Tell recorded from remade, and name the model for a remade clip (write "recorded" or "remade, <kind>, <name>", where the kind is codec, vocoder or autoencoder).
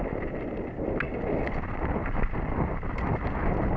recorded